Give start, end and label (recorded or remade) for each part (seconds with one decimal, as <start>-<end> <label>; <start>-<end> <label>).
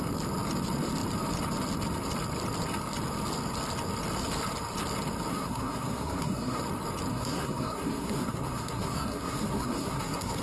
0.0-5.3 recorded; 5.3-6.6 remade; 6.6-7.1 recorded; 7.1-10.4 remade